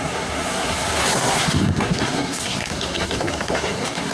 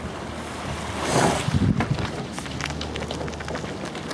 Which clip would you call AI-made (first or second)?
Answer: first